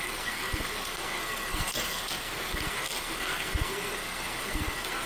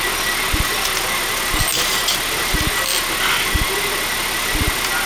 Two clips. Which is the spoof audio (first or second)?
first